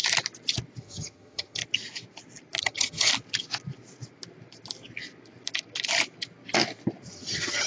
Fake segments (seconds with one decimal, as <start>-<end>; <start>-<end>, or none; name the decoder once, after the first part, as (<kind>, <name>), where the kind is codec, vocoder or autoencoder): 0.8-1.6 (vocoder, HiFi-GAN); 2.6-3.1; 7.1-7.7

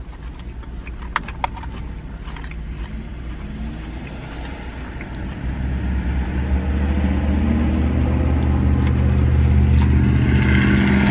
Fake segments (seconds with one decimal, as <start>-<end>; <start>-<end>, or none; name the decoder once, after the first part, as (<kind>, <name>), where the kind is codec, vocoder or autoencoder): none

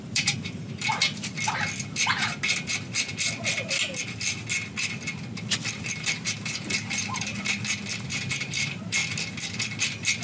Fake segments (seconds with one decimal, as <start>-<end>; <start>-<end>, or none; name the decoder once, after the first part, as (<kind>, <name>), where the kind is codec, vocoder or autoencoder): 0.0-0.9 (vocoder, BigVGAN v2); 5.8-7.3; 8.3-9.0

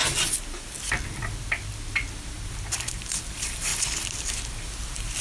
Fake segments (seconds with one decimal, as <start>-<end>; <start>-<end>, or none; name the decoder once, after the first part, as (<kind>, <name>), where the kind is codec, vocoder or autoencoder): 3.1-3.7 (vocoder, BigVGAN v2)

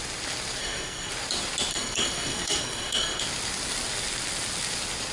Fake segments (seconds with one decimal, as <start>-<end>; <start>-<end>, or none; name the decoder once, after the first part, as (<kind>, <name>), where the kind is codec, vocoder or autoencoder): 0.6-1.1 (codec, SNAC); 1.7-3.2